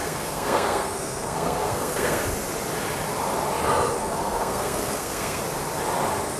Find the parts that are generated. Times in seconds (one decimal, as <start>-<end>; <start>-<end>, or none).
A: 0.0-2.2; 4.0-5.4